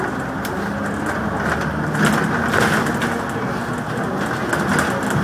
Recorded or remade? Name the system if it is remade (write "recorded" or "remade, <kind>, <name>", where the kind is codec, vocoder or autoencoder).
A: recorded